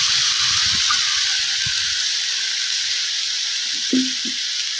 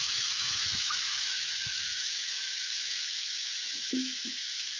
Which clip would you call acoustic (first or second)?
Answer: first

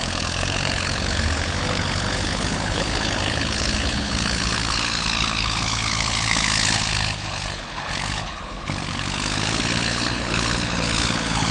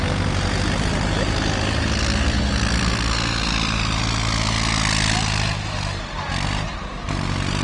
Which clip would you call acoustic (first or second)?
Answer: second